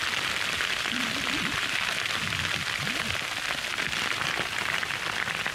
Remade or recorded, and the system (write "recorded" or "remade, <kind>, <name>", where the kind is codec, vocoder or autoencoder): recorded